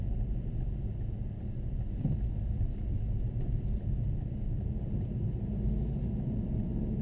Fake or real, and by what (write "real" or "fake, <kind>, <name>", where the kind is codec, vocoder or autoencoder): real